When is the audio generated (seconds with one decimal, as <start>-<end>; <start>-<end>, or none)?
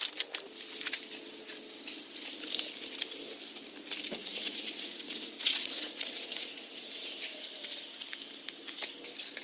4.2-6.9